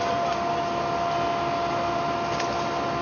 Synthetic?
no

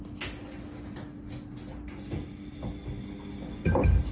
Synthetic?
no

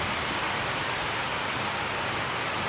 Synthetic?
no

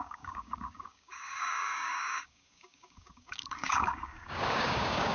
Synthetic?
yes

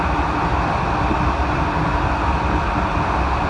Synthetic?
no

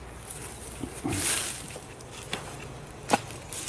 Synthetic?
no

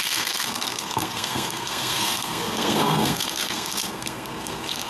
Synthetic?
yes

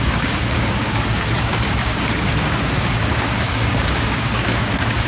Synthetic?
yes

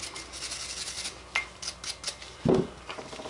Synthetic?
no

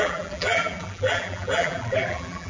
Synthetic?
yes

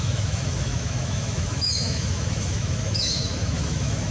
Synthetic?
yes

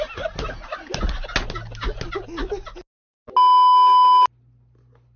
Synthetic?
no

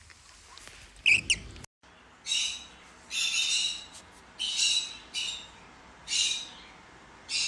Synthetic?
no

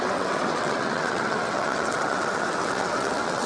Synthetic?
yes